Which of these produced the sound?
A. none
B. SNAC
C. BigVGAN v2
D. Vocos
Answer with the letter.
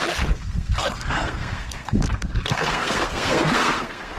B